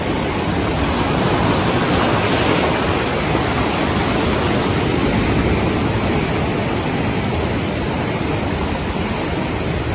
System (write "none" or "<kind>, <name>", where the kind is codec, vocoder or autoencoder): none